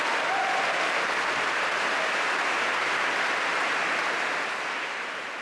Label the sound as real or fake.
real